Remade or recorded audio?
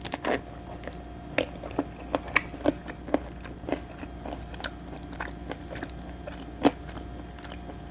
recorded